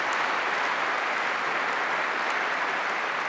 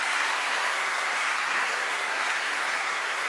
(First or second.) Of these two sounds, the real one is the first